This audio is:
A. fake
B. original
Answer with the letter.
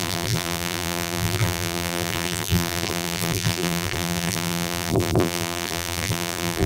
A